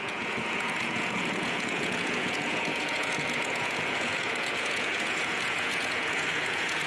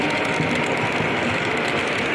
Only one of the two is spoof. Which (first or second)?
first